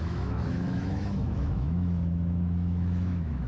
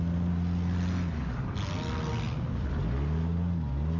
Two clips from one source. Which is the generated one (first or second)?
first